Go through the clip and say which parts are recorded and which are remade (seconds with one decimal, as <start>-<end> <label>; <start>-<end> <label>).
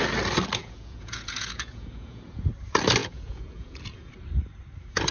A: 0.0-0.6 recorded; 0.6-2.5 remade; 2.5-3.0 recorded; 3.0-4.1 remade; 4.1-5.1 recorded